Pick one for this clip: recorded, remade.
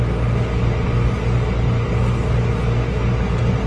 recorded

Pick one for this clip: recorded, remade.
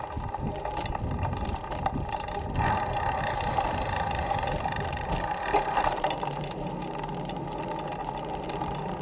recorded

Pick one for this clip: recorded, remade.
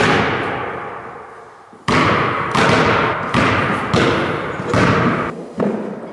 recorded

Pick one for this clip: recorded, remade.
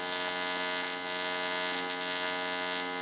recorded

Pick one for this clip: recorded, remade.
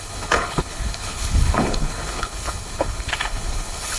remade